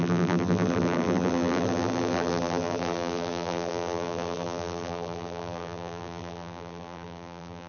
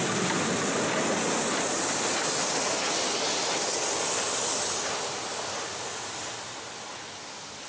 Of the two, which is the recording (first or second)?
second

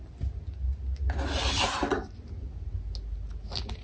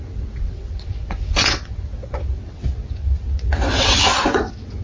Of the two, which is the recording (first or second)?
first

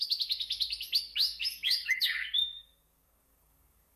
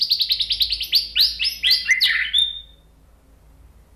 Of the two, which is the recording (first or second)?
second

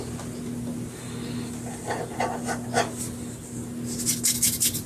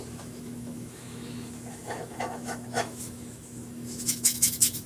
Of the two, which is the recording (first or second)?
first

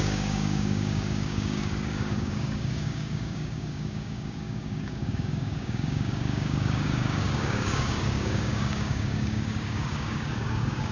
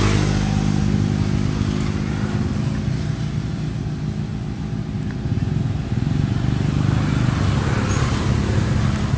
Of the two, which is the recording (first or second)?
second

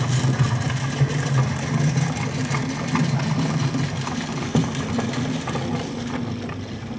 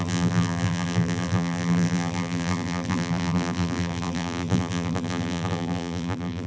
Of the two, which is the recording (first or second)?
first